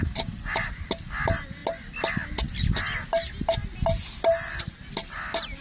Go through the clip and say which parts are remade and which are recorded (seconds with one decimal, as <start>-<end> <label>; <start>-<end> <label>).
0.0-5.6 recorded